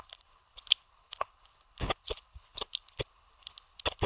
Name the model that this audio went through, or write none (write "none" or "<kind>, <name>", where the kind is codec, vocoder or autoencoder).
codec, HILCodec